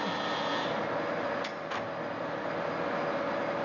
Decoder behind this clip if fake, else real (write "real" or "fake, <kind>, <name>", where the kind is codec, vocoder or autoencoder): real